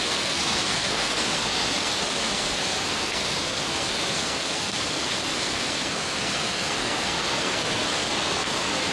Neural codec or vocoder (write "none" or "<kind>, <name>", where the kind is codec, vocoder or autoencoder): codec, SNAC